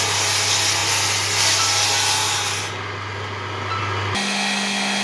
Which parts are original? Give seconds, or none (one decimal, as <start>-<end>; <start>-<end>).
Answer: 0.0-5.0